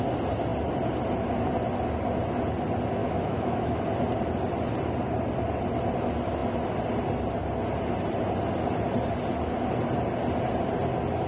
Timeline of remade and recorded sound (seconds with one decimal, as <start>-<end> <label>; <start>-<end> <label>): 0.0-3.0 recorded; 3.0-3.8 remade; 3.8-11.3 recorded